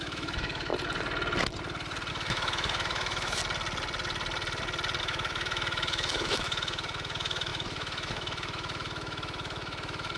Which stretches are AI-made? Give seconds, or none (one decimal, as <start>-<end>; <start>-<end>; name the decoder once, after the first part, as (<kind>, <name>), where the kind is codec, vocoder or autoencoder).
0.0-0.7 (autoencoder, DAC-VAE); 2.1-3.4; 5.0-10.2